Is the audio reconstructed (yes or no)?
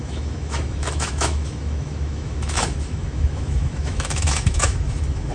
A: yes